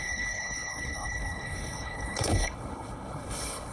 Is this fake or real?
fake